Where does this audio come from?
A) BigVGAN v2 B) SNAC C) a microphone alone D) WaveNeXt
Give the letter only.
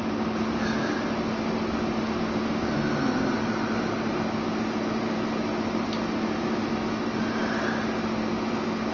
C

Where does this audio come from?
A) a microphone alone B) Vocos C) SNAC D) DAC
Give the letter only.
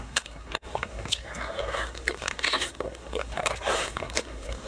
C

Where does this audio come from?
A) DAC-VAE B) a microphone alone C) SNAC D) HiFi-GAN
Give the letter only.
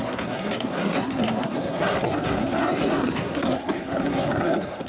C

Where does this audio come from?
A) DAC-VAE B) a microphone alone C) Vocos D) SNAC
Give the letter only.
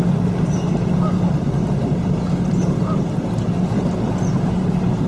B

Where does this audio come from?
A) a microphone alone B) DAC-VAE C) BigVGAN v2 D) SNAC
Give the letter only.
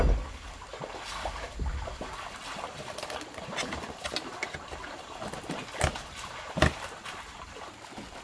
A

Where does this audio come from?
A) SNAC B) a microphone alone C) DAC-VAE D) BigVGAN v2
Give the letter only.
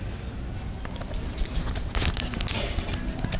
B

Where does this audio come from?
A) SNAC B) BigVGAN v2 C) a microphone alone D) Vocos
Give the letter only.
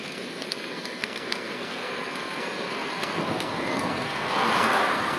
A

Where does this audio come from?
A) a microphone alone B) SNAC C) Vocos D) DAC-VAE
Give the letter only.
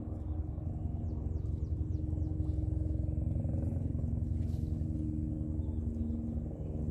A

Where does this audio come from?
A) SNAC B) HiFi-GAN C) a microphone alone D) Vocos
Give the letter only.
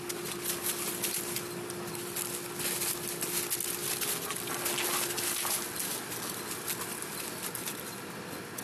C